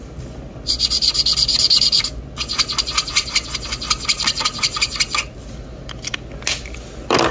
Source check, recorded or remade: recorded